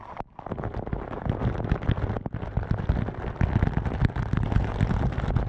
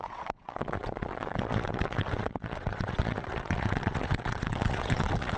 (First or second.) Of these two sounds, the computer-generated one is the second